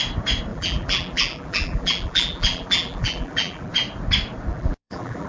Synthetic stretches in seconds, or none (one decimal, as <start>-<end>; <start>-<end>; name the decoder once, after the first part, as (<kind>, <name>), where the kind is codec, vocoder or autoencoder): 0.5-3.7 (vocoder, BigVGAN v2); 4.5-5.3